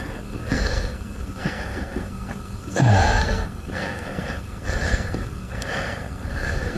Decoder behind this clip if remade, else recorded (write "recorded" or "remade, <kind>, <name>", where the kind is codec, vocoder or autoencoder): remade, codec, SNAC